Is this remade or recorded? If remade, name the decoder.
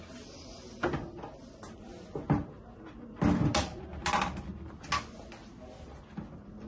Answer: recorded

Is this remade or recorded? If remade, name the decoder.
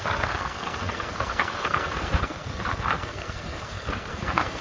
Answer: remade, codec, SNAC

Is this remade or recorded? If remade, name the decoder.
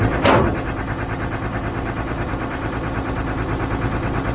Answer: recorded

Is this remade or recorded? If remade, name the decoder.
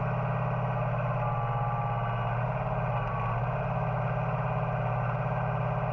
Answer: recorded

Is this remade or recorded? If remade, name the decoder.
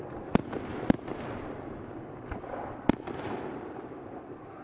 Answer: recorded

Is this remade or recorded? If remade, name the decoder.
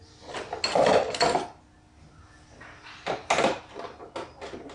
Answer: recorded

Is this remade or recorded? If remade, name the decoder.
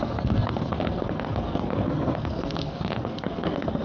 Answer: remade, codec, SNAC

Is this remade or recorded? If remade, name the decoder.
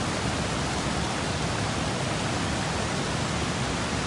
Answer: recorded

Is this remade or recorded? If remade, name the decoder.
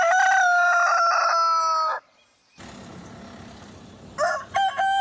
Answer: recorded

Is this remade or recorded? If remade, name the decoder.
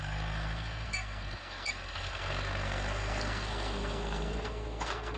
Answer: remade, codec, SNAC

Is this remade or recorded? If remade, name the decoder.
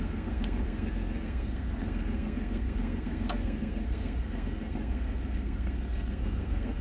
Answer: remade, codec, SNAC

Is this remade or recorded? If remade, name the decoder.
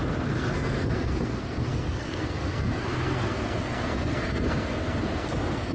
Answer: remade, codec, SNAC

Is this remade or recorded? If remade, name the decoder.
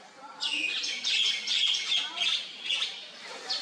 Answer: recorded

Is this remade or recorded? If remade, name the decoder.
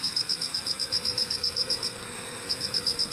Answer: remade, codec, SNAC